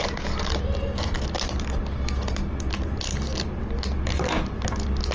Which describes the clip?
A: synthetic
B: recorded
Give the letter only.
B